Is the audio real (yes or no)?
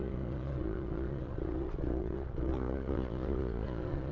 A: no